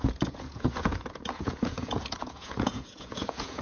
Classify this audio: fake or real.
fake